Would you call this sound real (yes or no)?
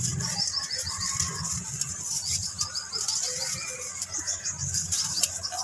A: yes